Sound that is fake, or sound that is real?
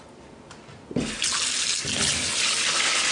real